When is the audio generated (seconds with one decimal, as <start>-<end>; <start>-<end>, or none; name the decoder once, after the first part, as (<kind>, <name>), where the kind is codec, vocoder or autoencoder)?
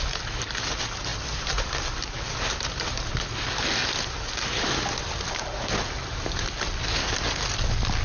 1.1-3.1 (vocoder, BigVGAN v2)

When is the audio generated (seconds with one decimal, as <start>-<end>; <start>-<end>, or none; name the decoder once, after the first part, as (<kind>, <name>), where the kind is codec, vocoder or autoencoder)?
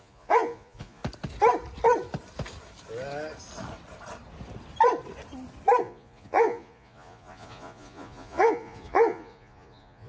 0.0-1.0 (vocoder, Vocos); 5.8-10.1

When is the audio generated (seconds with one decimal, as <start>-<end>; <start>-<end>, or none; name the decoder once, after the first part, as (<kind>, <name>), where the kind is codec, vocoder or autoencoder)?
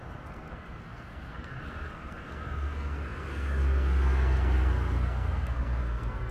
0.0-6.3 (codec, SNAC)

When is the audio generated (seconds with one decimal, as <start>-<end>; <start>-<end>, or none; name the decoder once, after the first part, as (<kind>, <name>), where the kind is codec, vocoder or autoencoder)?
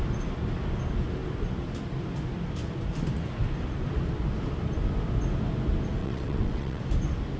6.0-6.8 (vocoder, WaveNeXt)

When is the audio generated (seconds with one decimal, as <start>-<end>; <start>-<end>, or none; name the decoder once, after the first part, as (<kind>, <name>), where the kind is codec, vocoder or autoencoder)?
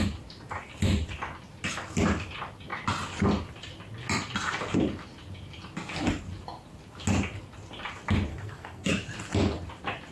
8.3-8.9 (codec, SNAC)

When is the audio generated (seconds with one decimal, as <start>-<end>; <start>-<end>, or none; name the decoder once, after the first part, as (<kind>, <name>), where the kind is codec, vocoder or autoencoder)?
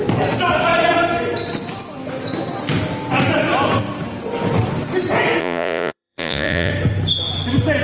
5.4-6.7 (vocoder, Vocos)